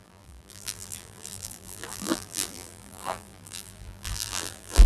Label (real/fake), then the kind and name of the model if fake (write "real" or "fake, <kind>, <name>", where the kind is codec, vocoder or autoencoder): fake, vocoder, BigVGAN v2